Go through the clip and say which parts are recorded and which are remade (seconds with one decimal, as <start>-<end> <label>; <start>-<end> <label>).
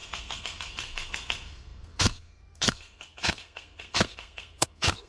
0.0-5.1 remade